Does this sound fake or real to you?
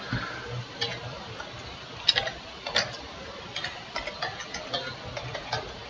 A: real